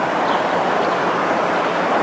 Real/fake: real